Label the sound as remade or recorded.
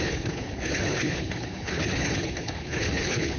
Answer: remade